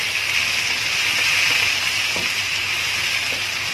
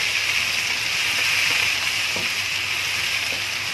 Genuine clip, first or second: first